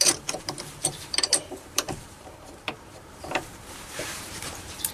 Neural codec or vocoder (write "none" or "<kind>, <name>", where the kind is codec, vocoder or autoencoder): vocoder, BigVGAN v2